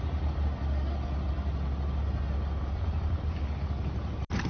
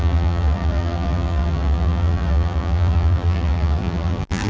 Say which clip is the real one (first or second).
first